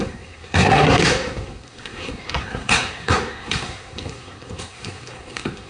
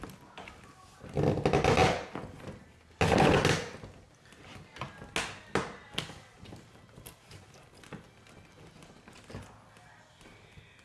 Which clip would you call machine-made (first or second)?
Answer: first